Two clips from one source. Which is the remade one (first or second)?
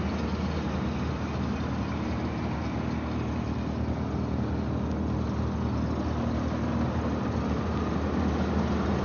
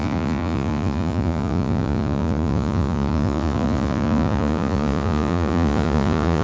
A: second